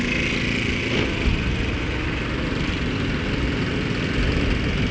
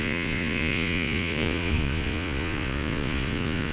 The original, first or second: first